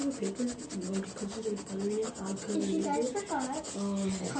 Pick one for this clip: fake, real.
real